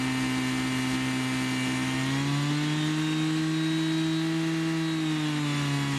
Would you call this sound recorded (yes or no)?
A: yes